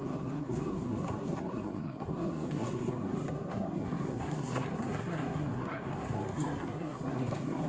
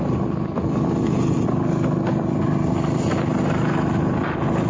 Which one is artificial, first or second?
first